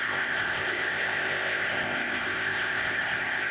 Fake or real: fake